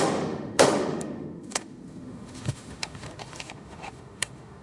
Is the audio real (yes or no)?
no